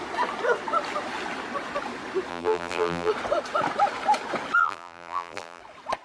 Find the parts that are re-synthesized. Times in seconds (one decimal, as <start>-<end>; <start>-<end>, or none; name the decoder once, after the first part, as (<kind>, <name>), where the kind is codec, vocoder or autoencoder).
2.3-3.1 (vocoder, BigVGAN v2); 4.6-5.6